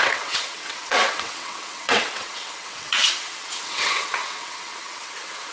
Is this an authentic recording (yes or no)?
no